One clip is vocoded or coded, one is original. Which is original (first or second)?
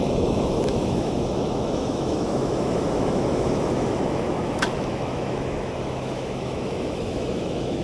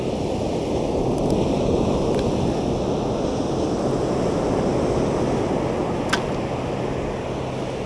second